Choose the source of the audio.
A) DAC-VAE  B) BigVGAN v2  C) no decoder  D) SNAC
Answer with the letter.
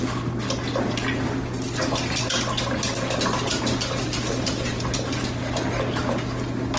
C